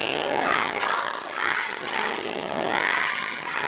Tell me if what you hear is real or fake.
fake